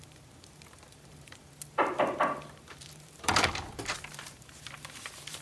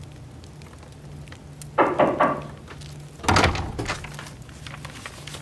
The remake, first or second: first